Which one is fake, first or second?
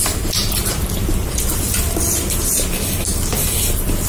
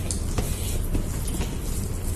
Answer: first